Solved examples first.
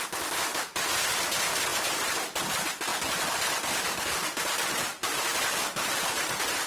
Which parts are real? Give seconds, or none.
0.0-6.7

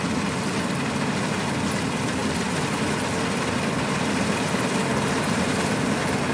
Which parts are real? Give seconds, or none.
0.0-6.3

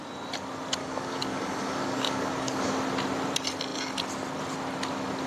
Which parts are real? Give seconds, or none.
0.0-0.8; 2.7-5.3

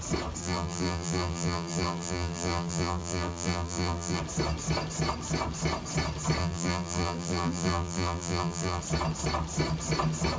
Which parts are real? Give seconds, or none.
0.0-0.4; 4.2-6.4; 8.8-10.4

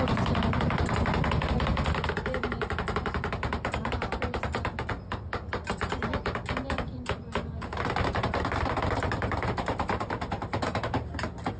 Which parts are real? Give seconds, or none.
0.0-11.6

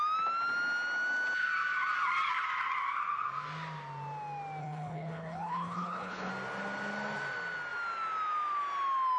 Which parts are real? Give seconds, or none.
0.0-4.6; 6.3-9.2

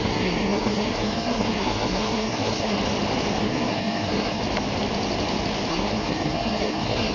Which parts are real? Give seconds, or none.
2.8-3.4; 4.4-5.7